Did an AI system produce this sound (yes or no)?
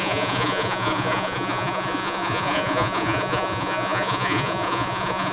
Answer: yes